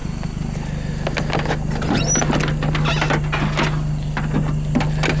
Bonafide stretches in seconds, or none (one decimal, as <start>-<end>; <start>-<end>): 0.0-5.2